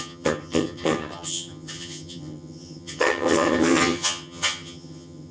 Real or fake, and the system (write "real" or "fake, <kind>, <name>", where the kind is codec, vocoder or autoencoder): fake, vocoder, HiFi-GAN